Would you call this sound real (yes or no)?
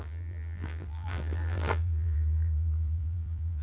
no